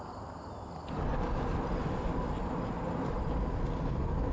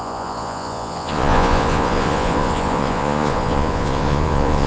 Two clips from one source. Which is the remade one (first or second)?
second